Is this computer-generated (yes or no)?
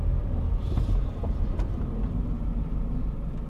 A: no